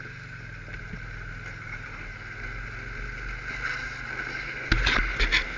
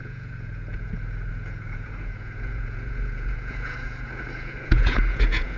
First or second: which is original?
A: first